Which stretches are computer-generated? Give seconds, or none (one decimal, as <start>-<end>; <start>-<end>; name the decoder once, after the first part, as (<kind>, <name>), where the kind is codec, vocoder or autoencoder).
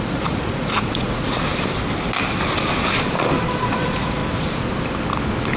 0.0-1.5 (vocoder, Vocos); 3.6-4.2